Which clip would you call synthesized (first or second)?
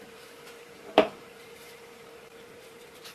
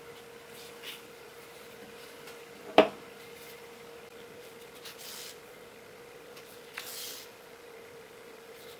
first